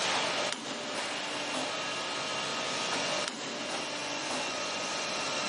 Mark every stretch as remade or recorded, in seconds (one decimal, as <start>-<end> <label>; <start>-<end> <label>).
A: 0.0-2.5 recorded; 2.5-3.2 remade; 3.2-4.0 recorded; 4.0-5.1 remade; 5.1-5.5 recorded